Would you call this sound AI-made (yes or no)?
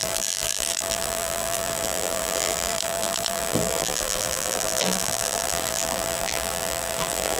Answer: yes